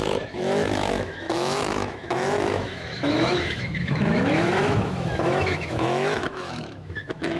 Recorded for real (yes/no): no